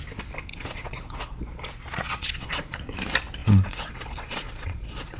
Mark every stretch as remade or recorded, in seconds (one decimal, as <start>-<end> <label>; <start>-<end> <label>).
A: 0.0-0.5 recorded; 0.5-2.8 remade; 2.8-3.4 recorded; 3.4-5.2 remade